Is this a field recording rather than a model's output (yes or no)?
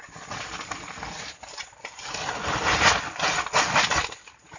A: yes